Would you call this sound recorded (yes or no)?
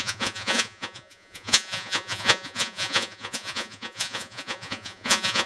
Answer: no